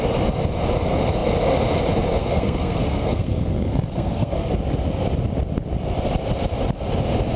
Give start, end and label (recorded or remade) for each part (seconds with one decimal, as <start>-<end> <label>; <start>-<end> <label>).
0.0-2.2 recorded; 2.2-4.5 remade; 4.5-7.4 recorded